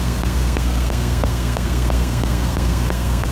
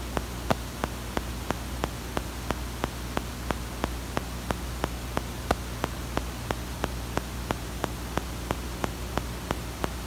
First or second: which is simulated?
first